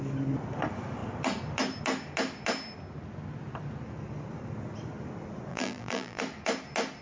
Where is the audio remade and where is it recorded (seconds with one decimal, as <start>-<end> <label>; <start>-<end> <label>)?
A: 0.0-5.5 recorded; 5.5-6.2 remade; 6.2-7.0 recorded